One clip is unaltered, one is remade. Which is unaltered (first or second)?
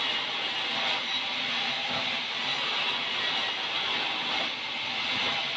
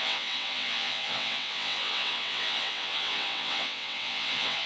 first